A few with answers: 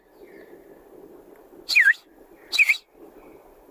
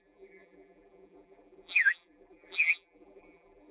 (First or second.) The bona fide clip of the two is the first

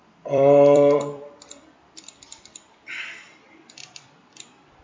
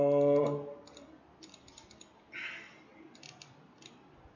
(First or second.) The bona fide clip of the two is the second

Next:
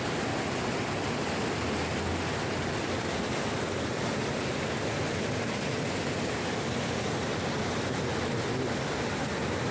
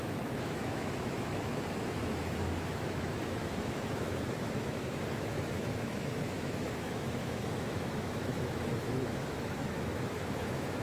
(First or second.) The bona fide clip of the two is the first